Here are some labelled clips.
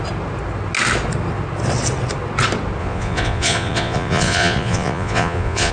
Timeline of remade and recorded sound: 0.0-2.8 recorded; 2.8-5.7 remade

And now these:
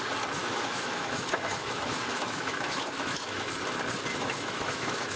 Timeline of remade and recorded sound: 0.0-0.4 recorded; 0.4-3.5 remade; 3.5-4.1 recorded; 4.1-5.2 remade

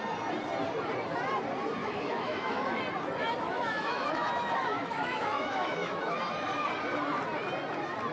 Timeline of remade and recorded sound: 0.0-1.8 recorded; 1.8-2.8 remade; 2.8-3.2 recorded; 3.2-6.2 remade; 6.2-8.1 recorded

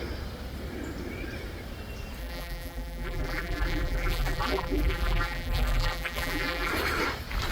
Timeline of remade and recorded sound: 0.0-2.2 recorded; 2.2-6.7 remade; 6.7-7.5 recorded

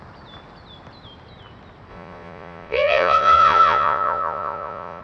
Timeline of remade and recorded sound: 0.0-1.9 recorded; 1.9-5.0 remade

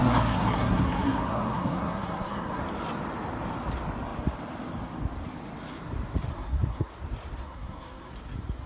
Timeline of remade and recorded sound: 0.0-2.6 remade; 2.6-6.3 recorded; 6.3-6.9 remade; 6.9-7.4 recorded; 7.4-8.1 remade; 8.1-8.7 recorded

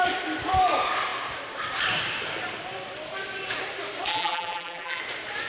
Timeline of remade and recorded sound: 0.0-4.1 recorded; 4.1-5.0 remade; 5.0-5.5 recorded